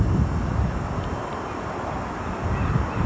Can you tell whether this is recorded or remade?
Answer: recorded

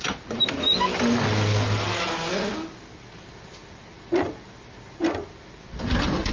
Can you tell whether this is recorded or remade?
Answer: recorded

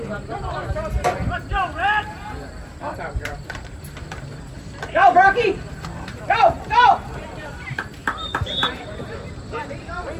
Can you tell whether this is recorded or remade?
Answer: remade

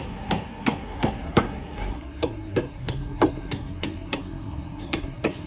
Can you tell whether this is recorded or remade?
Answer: remade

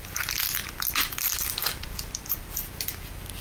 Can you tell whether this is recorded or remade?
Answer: recorded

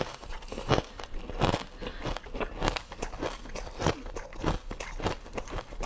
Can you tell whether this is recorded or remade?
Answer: recorded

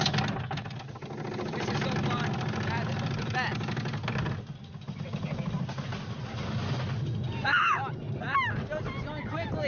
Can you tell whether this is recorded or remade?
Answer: recorded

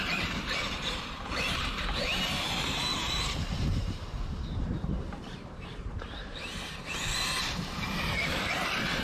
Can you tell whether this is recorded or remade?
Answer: remade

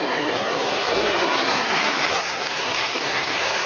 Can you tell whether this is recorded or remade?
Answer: remade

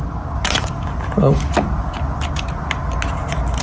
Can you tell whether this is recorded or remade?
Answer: recorded